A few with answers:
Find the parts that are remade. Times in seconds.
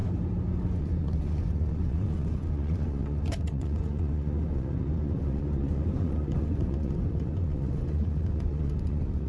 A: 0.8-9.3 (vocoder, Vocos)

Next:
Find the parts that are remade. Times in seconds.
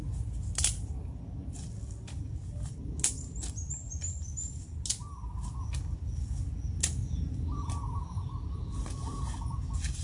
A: none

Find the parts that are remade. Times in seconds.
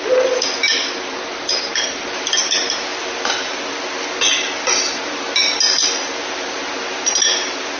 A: none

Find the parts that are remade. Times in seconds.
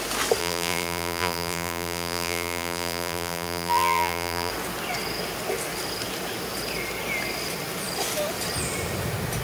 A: 0.4-4.5 (vocoder, BigVGAN v2)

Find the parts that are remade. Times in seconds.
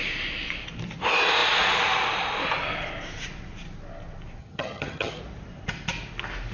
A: 4.4-5.2 (vocoder, HiFi-GAN)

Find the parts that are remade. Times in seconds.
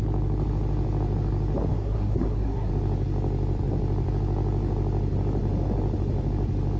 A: 1.7-2.7 (codec, SNAC)